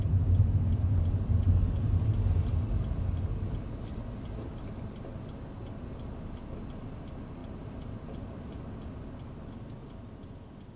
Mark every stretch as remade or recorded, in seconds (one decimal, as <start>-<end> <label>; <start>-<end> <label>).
0.0-7.4 recorded; 7.4-8.7 remade; 8.7-10.8 recorded